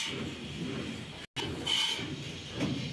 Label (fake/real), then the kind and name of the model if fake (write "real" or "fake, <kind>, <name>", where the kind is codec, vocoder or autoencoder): real